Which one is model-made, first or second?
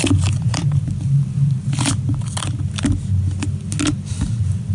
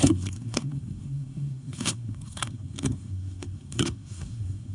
second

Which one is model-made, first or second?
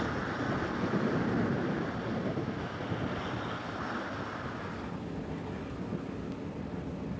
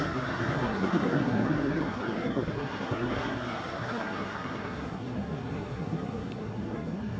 second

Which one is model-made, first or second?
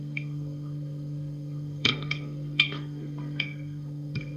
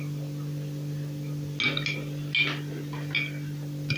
first